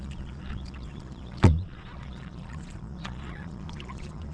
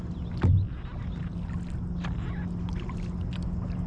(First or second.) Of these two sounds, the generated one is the first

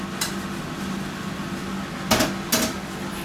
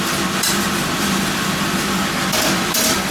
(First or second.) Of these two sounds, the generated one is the second